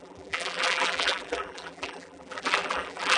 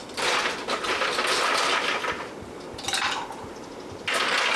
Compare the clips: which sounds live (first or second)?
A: second